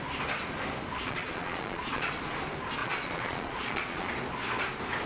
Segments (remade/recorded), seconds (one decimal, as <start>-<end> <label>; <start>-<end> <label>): 0.0-1.0 recorded; 1.0-2.1 remade; 2.1-2.8 recorded; 2.8-4.1 remade; 4.1-5.1 recorded